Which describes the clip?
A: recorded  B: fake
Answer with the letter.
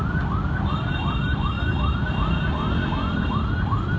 A